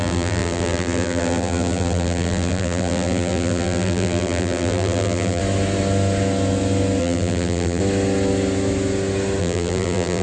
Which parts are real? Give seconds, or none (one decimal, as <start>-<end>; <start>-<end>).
5.4-7.0; 7.8-9.4

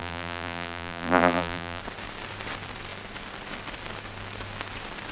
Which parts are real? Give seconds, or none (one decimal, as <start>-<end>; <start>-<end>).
1.8-5.1

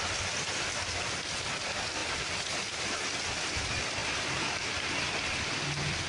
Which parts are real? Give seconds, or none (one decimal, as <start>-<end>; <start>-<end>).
0.0-2.0; 2.8-4.0; 5.4-6.1

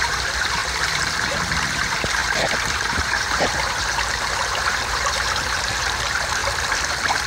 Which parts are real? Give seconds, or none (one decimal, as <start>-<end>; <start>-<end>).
6.4-7.3